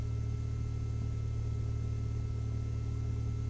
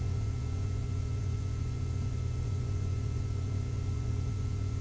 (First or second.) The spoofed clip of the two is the second